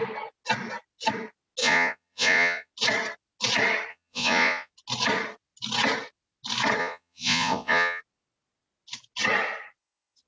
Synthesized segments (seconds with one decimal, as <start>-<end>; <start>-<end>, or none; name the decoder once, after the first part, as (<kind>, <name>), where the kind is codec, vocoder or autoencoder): 1.6-2.7 (vocoder, Vocos); 3.9-4.7; 6.8-8.0